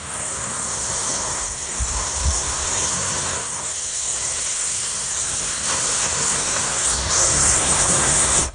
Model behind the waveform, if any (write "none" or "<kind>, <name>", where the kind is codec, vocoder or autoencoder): codec, SNAC